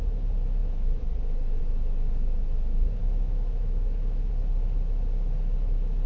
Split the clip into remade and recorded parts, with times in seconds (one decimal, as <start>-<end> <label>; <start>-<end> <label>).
0.0-3.0 recorded; 3.0-4.3 remade; 4.3-6.1 recorded